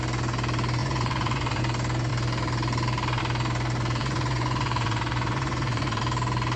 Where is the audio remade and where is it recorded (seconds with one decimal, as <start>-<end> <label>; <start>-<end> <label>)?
0.0-0.8 recorded; 0.8-1.6 remade; 1.6-4.0 recorded; 4.0-6.0 remade; 6.0-6.6 recorded